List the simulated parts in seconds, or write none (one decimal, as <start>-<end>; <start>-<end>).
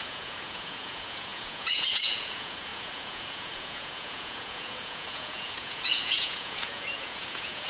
0.0-7.7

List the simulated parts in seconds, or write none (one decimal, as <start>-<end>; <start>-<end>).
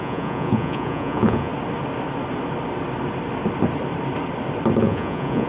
0.0-1.5; 4.8-5.5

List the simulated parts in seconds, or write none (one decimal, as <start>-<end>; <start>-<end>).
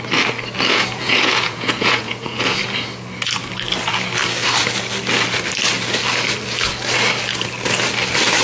0.7-2.6